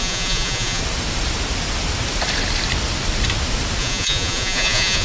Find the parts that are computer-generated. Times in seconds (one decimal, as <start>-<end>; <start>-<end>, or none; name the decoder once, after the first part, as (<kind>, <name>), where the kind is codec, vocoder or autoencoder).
0.0-0.8 (vocoder, Vocos); 3.8-5.0